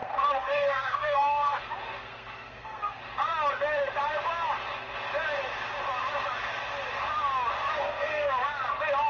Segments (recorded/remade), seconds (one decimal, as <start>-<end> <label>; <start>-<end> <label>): 0.0-1.6 remade; 1.6-2.0 recorded; 2.0-3.0 remade; 3.0-7.7 recorded; 7.7-8.3 remade; 8.3-9.1 recorded